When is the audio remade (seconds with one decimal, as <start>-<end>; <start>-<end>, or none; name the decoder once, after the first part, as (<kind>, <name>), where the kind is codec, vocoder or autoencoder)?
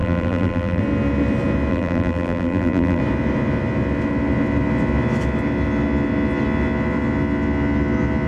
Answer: 0.0-0.8 (vocoder, BigVGAN v2); 1.7-3.0